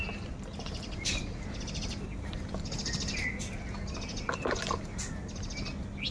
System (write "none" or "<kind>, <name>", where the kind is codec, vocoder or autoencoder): none